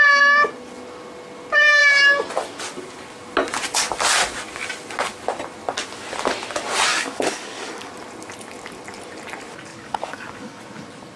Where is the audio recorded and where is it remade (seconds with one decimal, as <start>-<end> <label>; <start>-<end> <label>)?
0.0-6.9 recorded; 6.9-7.9 remade; 7.9-9.7 recorded; 9.7-10.6 remade; 10.6-11.2 recorded